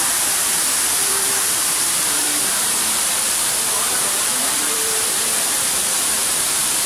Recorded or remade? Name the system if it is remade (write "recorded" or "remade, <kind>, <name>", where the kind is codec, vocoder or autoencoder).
remade, vocoder, BigVGAN v2